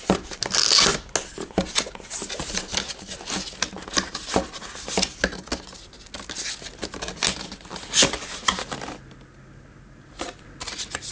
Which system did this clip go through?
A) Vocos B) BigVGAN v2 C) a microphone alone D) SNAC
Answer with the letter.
C